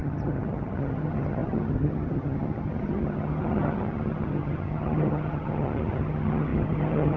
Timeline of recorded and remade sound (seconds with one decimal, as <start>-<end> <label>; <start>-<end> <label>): 0.0-7.2 remade